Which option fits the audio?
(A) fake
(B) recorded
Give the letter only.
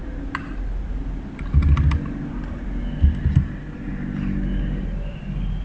B